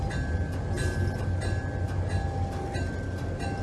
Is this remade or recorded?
recorded